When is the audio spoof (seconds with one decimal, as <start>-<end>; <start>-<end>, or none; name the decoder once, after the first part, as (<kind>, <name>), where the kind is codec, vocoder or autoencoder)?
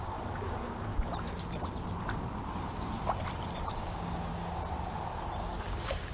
0.0-0.9 (codec, DAC); 3.7-4.3; 5.4-6.1